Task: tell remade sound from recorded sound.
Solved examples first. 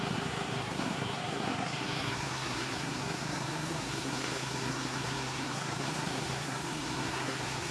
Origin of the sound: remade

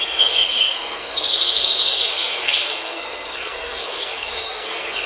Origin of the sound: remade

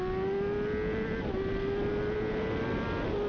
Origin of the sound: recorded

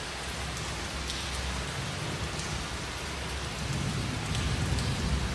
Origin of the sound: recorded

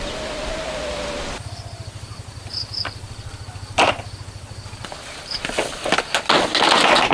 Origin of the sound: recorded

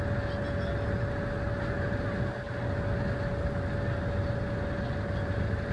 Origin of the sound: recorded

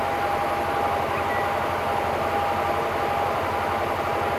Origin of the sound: recorded